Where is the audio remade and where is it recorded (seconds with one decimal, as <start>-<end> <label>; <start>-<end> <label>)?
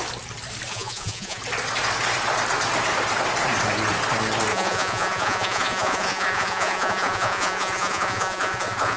0.0-0.7 recorded; 0.7-1.4 remade; 1.4-4.5 recorded; 4.5-9.0 remade